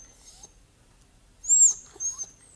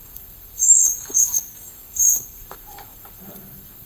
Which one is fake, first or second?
second